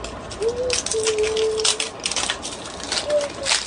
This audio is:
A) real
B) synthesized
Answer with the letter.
A